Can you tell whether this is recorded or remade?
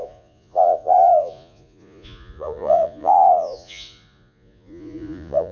remade